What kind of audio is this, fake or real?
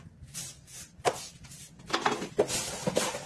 real